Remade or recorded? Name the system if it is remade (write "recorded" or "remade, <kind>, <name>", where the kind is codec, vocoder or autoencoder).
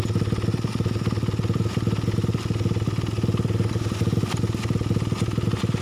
recorded